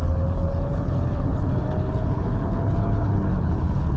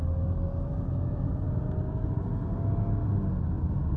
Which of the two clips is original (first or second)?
second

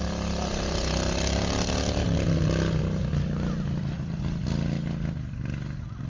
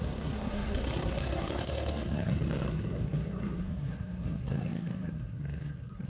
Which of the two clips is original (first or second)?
first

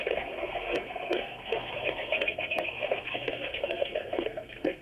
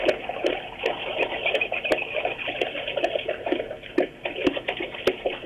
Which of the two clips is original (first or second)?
second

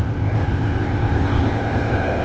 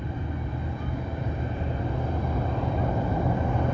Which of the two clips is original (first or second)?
second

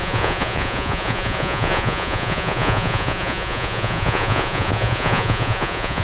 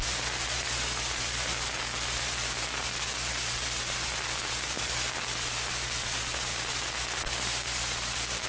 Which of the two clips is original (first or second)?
second